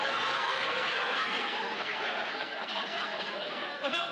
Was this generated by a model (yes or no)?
yes